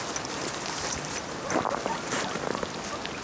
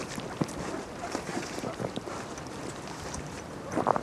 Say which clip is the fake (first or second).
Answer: second